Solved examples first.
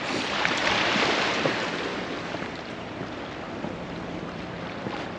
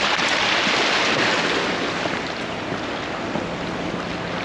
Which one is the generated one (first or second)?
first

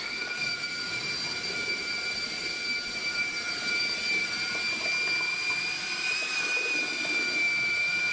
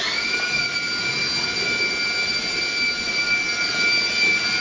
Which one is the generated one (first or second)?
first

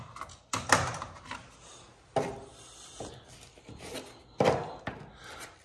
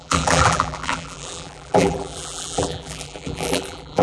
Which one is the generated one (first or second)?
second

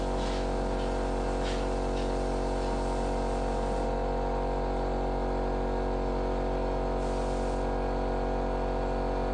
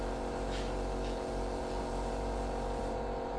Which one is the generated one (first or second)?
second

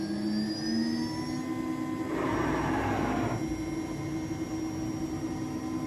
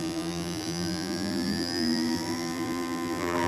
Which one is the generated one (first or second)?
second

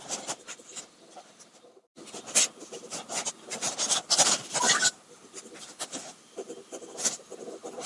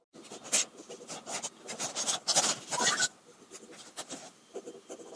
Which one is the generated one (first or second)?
first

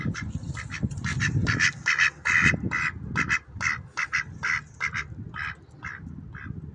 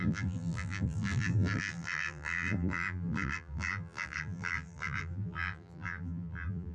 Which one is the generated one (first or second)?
second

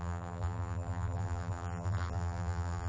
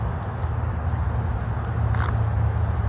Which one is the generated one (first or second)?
first